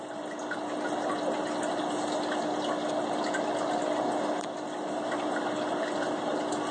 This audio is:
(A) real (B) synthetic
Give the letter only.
A